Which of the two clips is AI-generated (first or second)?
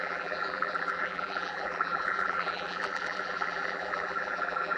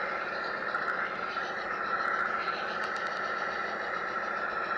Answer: first